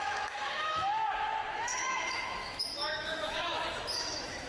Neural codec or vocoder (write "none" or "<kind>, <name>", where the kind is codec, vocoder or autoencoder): autoencoder, DAC-VAE